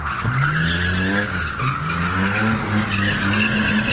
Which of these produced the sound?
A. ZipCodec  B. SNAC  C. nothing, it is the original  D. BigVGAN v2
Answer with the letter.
C